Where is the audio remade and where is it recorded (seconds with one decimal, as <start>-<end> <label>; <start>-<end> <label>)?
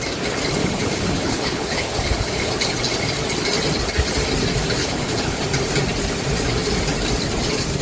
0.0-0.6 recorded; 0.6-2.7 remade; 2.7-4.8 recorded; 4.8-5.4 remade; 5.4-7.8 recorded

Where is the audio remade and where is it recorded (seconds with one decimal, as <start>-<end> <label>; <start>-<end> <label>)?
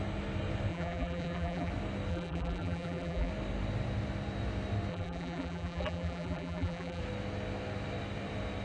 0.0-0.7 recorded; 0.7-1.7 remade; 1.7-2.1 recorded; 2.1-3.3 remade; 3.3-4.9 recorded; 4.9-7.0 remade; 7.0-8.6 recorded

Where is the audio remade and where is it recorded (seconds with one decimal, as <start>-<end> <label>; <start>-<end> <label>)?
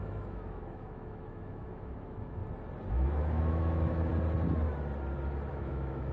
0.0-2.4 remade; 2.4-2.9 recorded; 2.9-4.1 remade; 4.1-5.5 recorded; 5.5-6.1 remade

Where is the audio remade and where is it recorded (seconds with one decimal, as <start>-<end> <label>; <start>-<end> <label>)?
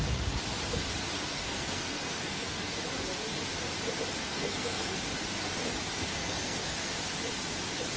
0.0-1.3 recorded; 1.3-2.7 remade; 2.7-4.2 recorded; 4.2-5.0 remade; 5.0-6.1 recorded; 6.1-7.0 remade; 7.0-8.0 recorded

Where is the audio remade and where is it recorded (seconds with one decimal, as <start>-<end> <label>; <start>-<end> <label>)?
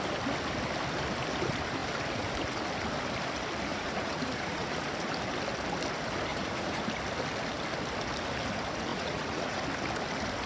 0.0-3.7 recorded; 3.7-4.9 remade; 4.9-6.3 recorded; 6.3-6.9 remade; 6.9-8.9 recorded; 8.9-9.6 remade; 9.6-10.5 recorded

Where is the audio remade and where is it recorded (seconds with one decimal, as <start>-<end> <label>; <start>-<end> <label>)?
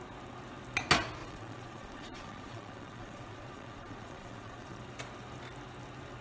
0.0-1.2 recorded; 1.2-4.8 remade; 4.8-6.2 recorded